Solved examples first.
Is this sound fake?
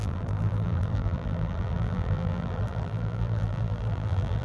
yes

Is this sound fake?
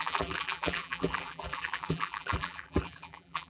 yes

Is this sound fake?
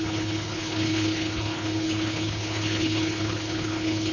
yes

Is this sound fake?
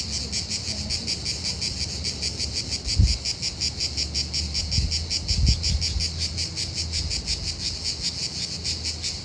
no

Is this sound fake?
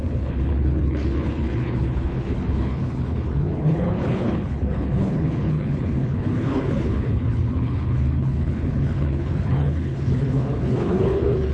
yes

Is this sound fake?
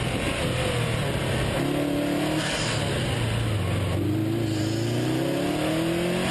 no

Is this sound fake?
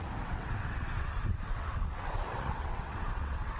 yes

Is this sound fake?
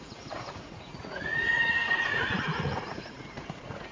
yes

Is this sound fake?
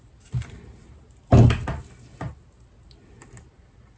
no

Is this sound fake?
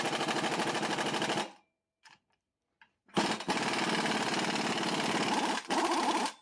no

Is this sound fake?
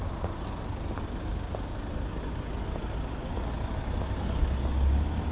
no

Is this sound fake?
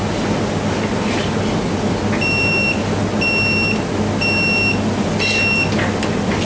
no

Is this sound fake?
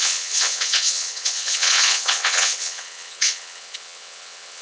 yes